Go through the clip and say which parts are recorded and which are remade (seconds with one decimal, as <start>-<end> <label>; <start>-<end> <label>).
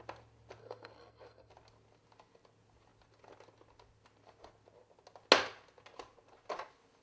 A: 0.0-0.6 recorded; 0.6-1.5 remade; 1.5-7.0 recorded